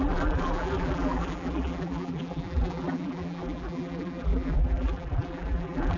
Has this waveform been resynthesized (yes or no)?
yes